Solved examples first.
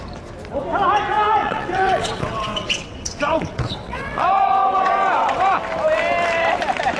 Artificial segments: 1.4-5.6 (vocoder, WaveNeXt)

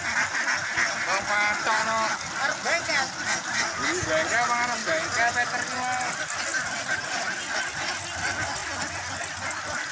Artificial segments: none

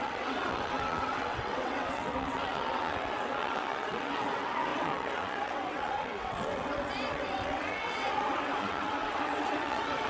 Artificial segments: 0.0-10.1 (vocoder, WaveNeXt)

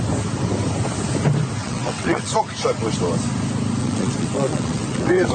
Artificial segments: 1.6-2.4 (vocoder, WaveNeXt); 3.8-5.3

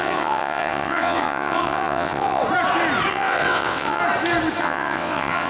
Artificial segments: 0.0-2.4 (vocoder, WaveNeXt); 3.1-4.0; 4.6-5.5

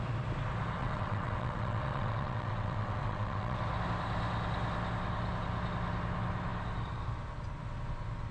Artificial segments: 0.8-3.6 (vocoder, WaveNeXt)

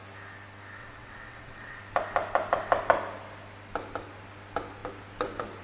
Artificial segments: 0.8-1.8 (vocoder, WaveNeXt)

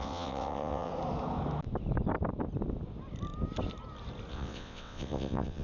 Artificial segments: 0.0-0.9 (vocoder, WaveNeXt); 4.3-5.6